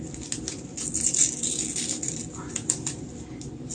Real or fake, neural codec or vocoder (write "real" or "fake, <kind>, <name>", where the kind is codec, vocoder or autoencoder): real